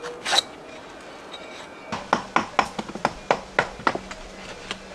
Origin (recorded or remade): recorded